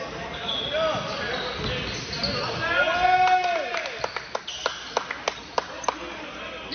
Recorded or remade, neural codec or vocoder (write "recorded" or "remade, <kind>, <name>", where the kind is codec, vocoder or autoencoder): recorded